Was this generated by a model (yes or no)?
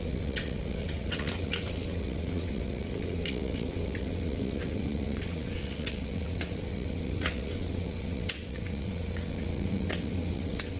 yes